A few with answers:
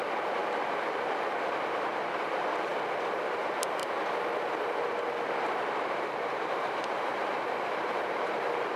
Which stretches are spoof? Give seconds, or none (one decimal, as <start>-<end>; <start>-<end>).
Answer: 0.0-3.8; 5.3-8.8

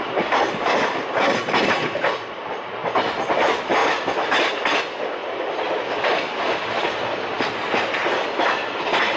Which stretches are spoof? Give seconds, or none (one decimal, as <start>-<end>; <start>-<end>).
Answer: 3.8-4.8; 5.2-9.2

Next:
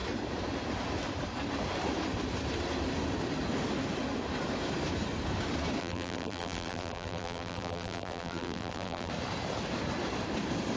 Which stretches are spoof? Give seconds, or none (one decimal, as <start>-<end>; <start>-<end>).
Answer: 5.8-9.1

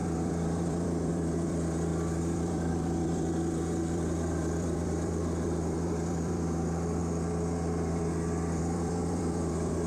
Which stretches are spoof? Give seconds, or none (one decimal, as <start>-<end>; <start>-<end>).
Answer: 0.0-9.9